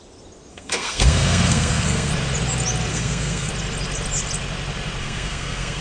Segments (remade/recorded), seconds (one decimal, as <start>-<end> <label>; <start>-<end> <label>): 0.0-0.5 recorded; 0.5-2.1 remade; 2.1-2.9 recorded; 2.9-3.5 remade; 3.5-5.0 recorded; 5.0-5.8 remade